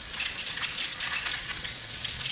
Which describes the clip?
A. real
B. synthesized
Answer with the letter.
B